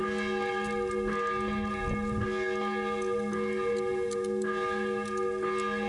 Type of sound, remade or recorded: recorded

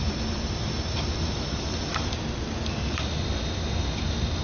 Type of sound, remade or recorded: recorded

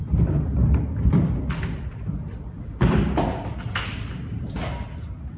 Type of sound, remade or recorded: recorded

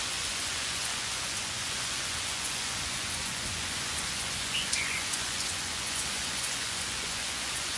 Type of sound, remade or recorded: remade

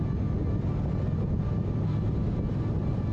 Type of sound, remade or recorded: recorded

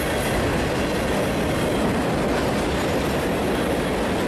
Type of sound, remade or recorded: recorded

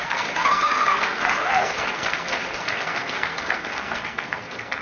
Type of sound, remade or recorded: remade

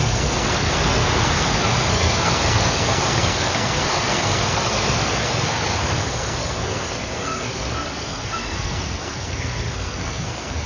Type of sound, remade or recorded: remade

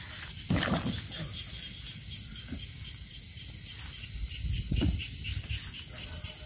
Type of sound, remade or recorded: recorded